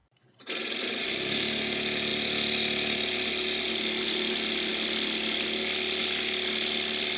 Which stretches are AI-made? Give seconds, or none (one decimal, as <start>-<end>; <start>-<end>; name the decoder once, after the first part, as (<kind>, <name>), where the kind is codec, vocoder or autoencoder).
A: none